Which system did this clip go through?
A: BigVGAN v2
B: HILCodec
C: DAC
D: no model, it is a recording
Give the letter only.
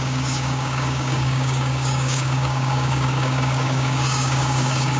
C